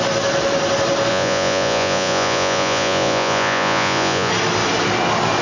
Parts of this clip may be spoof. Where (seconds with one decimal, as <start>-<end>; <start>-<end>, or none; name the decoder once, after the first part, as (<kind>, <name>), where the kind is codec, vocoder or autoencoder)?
1.1-4.3 (vocoder, Vocos)